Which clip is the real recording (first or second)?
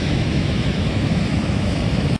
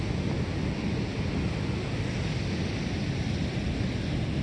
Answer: second